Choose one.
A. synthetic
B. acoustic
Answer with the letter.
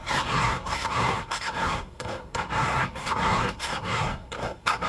A